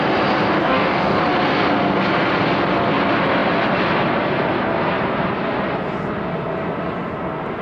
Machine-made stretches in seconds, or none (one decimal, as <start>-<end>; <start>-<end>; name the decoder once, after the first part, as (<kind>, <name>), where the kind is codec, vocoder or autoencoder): 0.6-1.2 (codec, DAC)